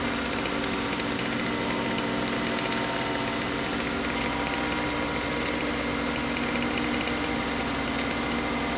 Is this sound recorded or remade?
recorded